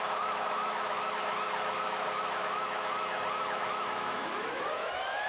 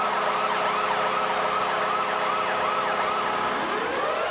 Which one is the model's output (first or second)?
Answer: first